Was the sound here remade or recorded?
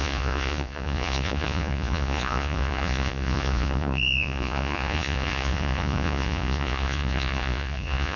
remade